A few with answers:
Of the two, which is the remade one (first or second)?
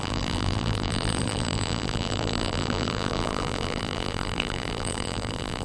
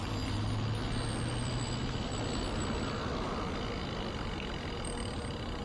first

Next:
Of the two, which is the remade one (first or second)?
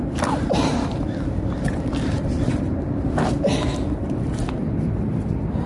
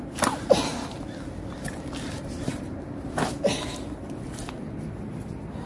first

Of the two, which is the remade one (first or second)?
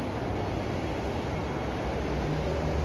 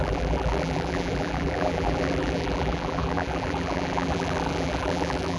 second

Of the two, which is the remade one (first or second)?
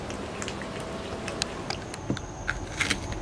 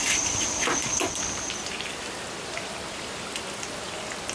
second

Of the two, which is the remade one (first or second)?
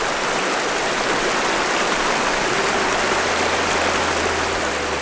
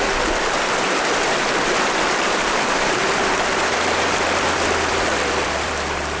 second